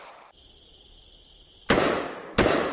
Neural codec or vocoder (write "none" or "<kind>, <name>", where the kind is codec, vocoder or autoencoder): none